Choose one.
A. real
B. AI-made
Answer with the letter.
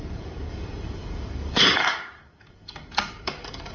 B